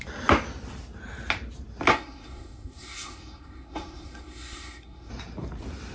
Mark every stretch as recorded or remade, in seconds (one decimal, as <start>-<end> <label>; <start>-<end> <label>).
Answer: 0.0-1.9 recorded; 1.9-5.1 remade; 5.1-5.9 recorded